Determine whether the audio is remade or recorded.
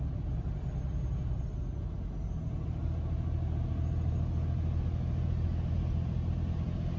recorded